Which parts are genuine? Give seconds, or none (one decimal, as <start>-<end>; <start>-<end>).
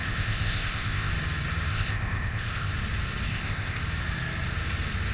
1.1-1.7; 2.7-3.3; 3.8-5.1